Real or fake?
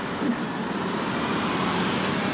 fake